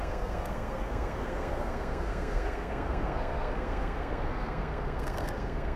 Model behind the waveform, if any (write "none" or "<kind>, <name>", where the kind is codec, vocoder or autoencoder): codec, SNAC